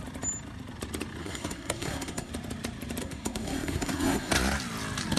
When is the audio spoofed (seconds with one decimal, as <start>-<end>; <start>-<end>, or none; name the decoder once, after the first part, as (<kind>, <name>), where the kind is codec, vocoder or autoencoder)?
1.2-2.3 (codec, SNAC); 3.0-4.3